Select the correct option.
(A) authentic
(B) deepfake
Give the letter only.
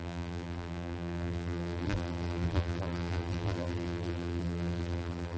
B